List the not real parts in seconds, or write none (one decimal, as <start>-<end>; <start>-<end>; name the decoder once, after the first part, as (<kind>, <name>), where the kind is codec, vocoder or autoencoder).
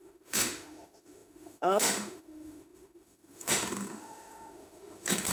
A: 0.0-5.3 (autoencoder, DAC-VAE)